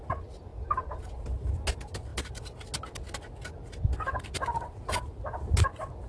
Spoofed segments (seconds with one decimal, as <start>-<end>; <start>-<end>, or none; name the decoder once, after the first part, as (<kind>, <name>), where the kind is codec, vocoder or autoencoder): 0.5-1.0 (vocoder, BigVGAN v2)